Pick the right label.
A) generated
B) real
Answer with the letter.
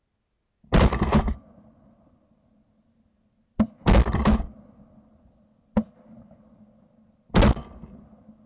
B